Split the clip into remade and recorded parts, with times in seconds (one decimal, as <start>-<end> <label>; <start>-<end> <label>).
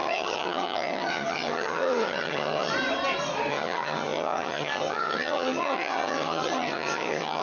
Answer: 0.0-2.7 remade; 2.7-3.5 recorded; 3.5-7.4 remade